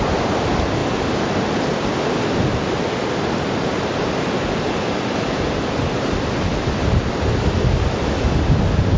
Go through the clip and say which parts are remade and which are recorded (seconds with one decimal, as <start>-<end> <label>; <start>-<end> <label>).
0.0-9.0 recorded